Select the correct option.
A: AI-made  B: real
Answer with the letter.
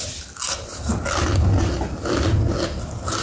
B